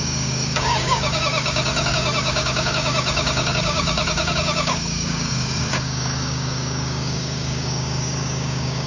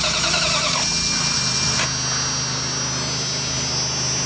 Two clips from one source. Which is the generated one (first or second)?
first